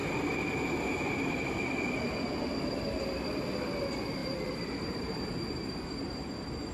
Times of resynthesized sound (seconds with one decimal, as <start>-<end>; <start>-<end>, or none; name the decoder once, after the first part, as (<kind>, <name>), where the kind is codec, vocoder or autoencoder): 4.2-5.2 (vocoder, BigVGAN v2)